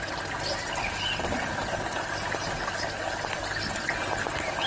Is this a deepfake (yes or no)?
no